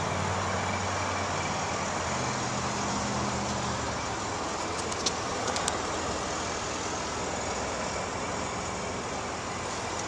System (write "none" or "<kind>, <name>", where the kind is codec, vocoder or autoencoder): none